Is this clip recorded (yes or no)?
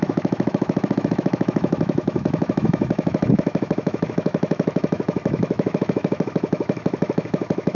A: no